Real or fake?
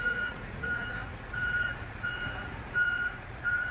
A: fake